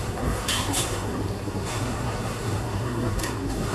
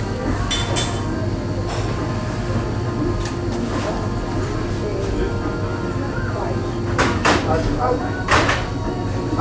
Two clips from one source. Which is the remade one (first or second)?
first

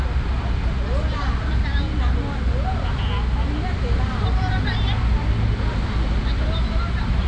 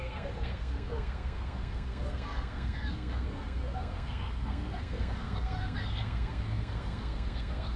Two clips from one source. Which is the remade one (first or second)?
second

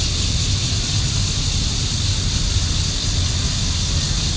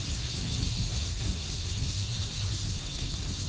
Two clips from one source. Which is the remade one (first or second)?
second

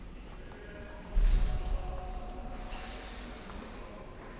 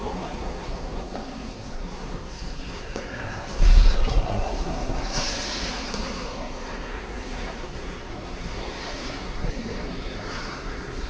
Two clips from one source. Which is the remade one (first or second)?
second